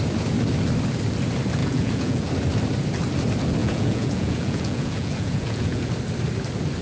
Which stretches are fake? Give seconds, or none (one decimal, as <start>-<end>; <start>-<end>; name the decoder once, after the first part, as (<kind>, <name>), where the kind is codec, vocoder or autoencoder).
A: 1.6-2.3 (vocoder, Vocos); 3.6-5.9